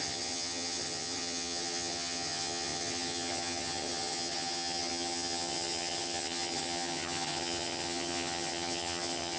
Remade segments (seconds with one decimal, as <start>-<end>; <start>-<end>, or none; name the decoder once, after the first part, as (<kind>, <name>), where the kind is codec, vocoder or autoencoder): 0.0-9.4 (vocoder, HiFi-GAN)